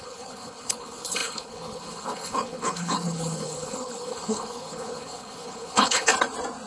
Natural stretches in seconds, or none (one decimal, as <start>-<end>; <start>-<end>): 6.1-6.7